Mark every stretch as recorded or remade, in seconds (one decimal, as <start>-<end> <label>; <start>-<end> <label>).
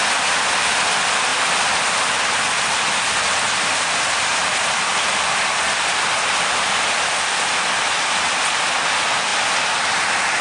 0.0-10.4 recorded